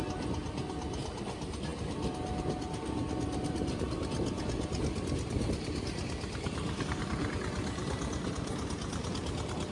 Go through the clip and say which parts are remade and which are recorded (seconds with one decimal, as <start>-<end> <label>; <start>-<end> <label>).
0.0-9.7 recorded